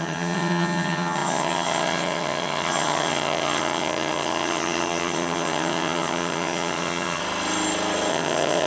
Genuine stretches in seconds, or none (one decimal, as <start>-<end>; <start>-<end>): 7.2-8.1